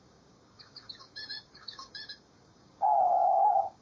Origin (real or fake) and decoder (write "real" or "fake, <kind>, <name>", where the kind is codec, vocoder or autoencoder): fake, codec, DAC